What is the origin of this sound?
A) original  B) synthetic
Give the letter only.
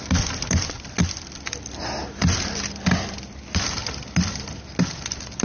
A